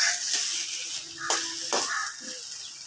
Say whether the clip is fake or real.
real